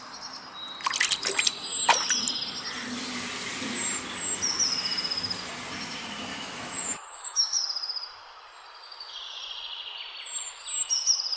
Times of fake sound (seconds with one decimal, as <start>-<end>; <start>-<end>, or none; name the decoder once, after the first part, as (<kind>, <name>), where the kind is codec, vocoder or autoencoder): 6.3-7.6 (autoencoder, DAC-VAE)